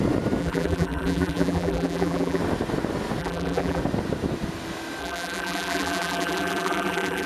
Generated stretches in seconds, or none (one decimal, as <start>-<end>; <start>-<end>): 0.4-2.4; 3.2-3.8; 5.0-7.3